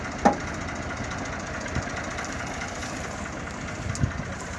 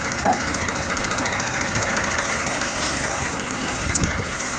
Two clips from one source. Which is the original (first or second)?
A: first